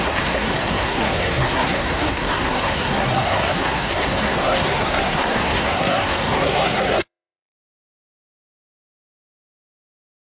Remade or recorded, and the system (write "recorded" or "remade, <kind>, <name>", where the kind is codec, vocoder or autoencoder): remade, codec, SNAC